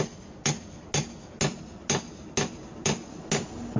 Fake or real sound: real